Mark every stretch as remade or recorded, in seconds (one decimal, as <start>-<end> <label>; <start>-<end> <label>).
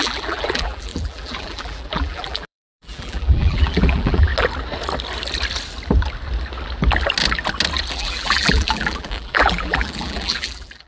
0.0-4.3 remade; 4.3-7.9 recorded; 7.9-10.9 remade